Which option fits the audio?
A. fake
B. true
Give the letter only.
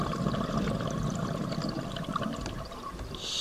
B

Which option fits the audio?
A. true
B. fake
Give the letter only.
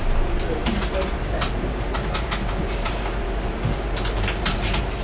A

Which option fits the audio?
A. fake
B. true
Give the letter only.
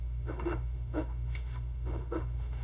A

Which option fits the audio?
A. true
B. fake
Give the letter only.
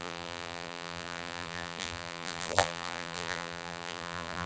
B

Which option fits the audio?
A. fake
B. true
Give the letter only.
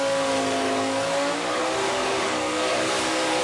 A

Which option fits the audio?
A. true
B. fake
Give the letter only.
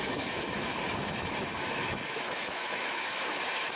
B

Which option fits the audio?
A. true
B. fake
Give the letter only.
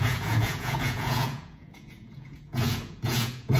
B